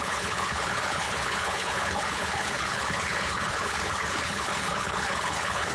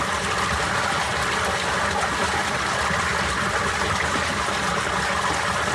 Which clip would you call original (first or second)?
second